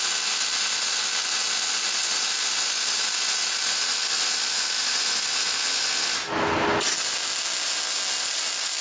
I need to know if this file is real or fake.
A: real